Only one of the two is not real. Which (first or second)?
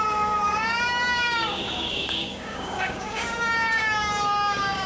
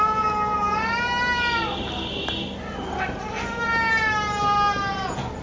first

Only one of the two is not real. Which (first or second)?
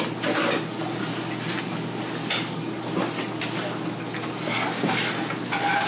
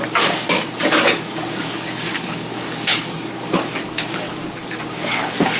second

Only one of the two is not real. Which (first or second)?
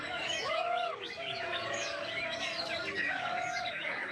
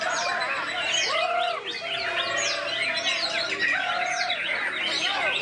first